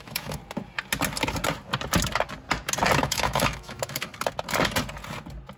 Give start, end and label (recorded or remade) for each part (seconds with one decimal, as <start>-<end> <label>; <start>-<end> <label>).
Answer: 0.0-0.4 remade; 0.4-3.0 recorded; 3.0-4.1 remade; 4.1-5.6 recorded

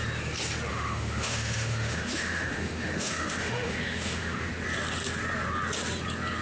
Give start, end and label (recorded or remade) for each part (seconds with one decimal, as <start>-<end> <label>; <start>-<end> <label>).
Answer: 0.0-0.7 recorded; 0.7-4.5 remade; 4.5-6.4 recorded

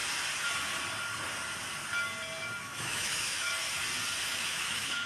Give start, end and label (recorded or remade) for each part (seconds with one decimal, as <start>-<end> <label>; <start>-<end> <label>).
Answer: 0.0-2.6 recorded; 2.6-3.5 remade; 3.5-4.2 recorded; 4.2-5.1 remade

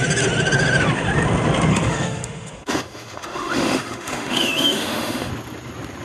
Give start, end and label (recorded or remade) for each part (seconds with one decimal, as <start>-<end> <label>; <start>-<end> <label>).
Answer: 0.0-1.7 recorded; 1.7-5.3 remade; 5.3-6.0 recorded

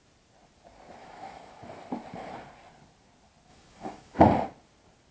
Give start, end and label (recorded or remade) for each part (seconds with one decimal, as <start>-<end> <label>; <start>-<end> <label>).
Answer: 0.0-1.0 recorded; 1.0-1.7 remade; 1.7-3.5 recorded; 3.5-4.2 remade; 4.2-5.1 recorded

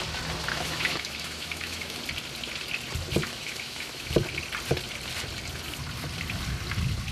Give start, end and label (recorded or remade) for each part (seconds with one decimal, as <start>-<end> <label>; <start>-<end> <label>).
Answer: 0.0-0.5 recorded; 0.5-2.0 remade; 2.0-3.2 recorded; 3.2-4.1 remade; 4.1-7.1 recorded